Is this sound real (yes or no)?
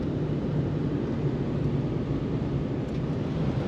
yes